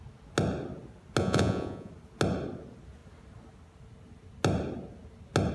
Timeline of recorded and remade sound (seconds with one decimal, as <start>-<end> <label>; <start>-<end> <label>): 0.0-1.2 recorded; 1.2-1.9 remade; 1.9-5.5 recorded